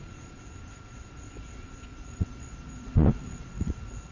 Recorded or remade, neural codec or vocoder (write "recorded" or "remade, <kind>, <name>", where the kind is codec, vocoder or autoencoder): remade, vocoder, Vocos